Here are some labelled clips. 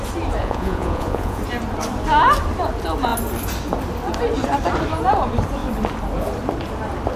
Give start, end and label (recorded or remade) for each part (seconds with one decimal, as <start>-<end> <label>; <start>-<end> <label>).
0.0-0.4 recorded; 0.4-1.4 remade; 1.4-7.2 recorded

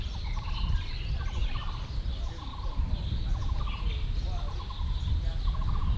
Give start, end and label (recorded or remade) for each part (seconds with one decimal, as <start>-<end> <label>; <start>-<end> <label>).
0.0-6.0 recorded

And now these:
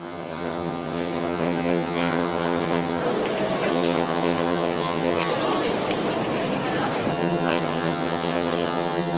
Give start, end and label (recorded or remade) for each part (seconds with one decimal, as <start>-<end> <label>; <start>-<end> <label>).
0.0-3.0 remade; 3.0-3.7 recorded; 3.7-5.3 remade; 5.3-7.1 recorded; 7.1-9.2 remade

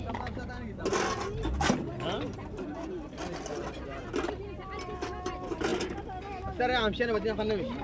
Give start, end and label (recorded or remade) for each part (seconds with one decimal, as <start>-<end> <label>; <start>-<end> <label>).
0.0-7.8 recorded